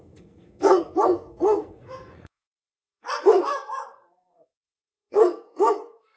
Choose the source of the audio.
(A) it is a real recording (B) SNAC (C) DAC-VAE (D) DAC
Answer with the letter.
B